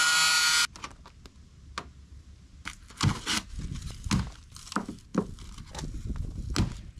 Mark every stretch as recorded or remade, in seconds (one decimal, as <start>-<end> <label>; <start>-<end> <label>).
0.0-3.5 recorded; 3.5-4.1 remade; 4.1-7.0 recorded